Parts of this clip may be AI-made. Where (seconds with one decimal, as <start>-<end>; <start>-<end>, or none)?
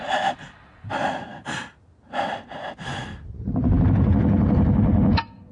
2.9-4.6